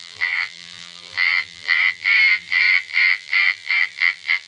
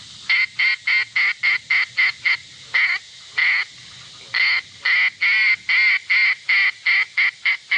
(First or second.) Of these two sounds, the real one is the second